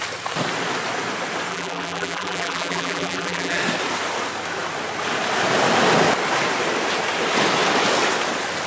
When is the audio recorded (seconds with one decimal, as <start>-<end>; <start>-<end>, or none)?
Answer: 0.0-1.5; 3.6-8.7